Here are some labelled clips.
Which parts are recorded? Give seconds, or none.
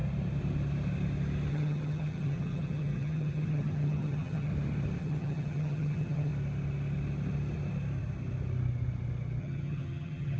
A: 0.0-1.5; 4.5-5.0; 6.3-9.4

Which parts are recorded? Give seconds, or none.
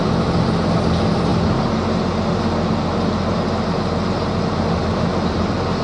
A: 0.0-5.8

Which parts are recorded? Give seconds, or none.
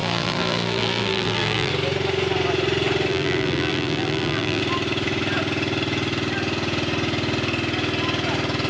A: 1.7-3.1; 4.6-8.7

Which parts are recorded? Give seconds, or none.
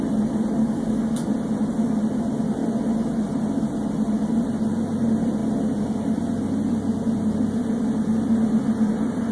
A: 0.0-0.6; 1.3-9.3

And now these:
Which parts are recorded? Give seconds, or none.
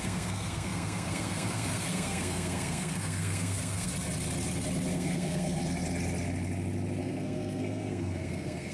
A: 3.9-4.9; 5.6-7.0